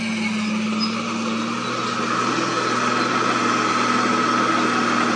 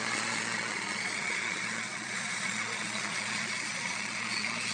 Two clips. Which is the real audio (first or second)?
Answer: first